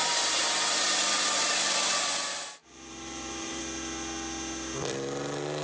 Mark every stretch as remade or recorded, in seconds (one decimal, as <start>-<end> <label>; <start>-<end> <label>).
0.0-0.7 remade; 0.7-1.4 recorded; 1.4-1.9 remade; 1.9-2.6 recorded; 2.6-3.6 remade; 3.6-5.6 recorded